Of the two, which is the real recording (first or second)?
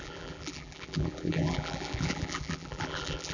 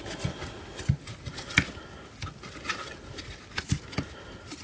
second